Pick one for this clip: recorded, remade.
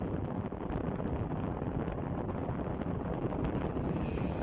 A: remade